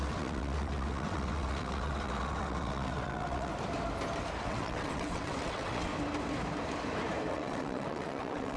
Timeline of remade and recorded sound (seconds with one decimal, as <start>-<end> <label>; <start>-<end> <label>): 0.0-3.5 remade; 3.5-4.4 recorded; 4.4-5.9 remade; 5.9-7.3 recorded; 7.3-8.6 remade

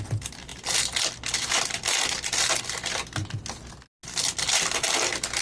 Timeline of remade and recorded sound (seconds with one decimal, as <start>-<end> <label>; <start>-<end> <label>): 0.0-5.4 recorded

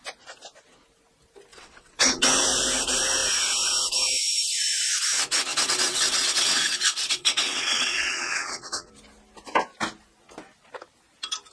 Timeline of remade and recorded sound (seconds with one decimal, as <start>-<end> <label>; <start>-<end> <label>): 0.0-1.5 recorded; 1.5-2.2 remade; 2.2-5.5 recorded; 5.5-8.9 remade; 8.9-11.5 recorded